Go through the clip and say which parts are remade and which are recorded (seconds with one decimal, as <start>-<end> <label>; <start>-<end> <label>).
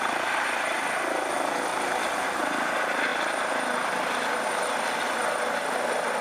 0.0-6.2 recorded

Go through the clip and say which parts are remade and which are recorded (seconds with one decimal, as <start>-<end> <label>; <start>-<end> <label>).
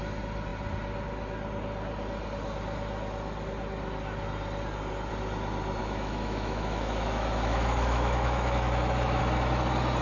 0.0-5.8 recorded; 5.8-9.2 remade; 9.2-10.0 recorded